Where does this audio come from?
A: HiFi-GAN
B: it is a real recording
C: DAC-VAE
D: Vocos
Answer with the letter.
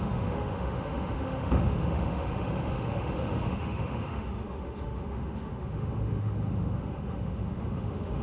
C